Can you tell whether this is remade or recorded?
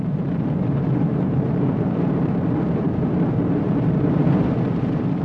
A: remade